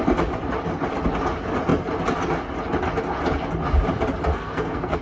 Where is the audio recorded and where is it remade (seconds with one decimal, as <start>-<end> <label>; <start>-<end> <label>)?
0.0-4.3 recorded; 4.3-5.0 remade